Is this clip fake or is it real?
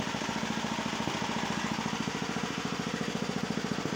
real